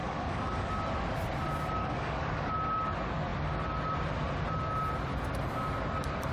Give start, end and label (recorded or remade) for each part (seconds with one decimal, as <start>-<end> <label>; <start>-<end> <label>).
0.0-0.7 remade; 0.7-1.8 recorded; 1.8-2.5 remade; 2.5-6.3 recorded